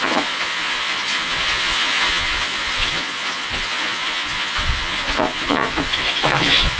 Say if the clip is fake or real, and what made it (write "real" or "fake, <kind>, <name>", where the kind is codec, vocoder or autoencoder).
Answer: fake, vocoder, Vocos